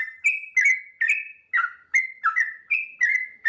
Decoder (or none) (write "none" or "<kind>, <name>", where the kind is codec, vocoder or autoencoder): none